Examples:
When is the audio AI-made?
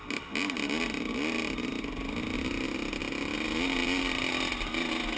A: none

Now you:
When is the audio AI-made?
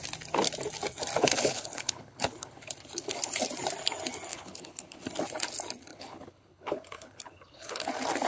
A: 1.2-2.7 (codec, HILCodec); 4.3-5.0; 5.9-7.9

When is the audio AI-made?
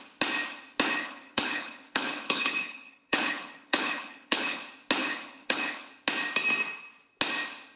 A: 1.0-4.6 (codec, HILCodec); 5.0-5.9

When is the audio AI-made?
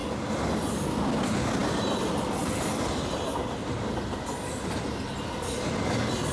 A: none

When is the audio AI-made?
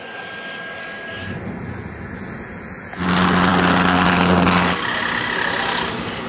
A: none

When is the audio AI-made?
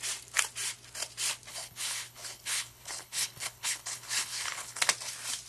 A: 1.5-4.8 (codec, HILCodec)